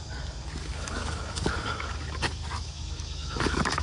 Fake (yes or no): yes